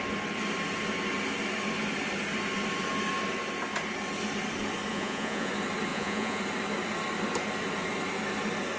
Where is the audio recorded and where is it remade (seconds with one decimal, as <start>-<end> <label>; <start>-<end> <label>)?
0.0-4.9 recorded; 4.9-5.5 remade; 5.5-5.9 recorded; 5.9-6.4 remade; 6.4-8.8 recorded